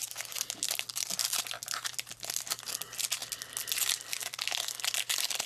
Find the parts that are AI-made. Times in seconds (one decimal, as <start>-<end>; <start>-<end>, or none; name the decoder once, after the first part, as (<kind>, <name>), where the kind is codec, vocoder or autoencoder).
none